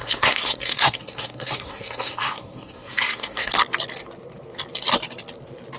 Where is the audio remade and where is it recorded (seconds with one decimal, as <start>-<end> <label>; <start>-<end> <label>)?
0.0-3.5 remade; 3.5-5.8 recorded